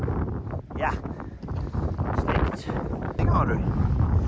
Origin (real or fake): real